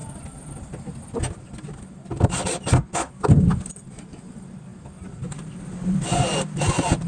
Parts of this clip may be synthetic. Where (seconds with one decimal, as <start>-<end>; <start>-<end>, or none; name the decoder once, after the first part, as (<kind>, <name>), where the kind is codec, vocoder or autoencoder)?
none